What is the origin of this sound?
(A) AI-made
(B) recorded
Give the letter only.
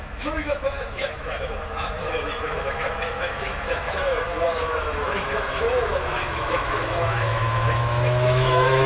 A